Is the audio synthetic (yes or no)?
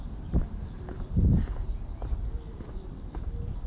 no